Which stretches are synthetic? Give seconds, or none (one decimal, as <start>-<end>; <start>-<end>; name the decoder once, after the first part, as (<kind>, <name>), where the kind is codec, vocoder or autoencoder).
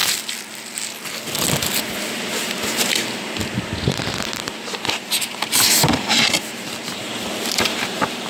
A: 1.9-3.4 (vocoder, BigVGAN v2); 5.2-8.3